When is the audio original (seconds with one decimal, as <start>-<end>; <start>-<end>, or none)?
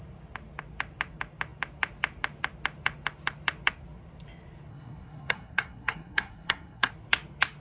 0.0-4.7; 6.9-7.6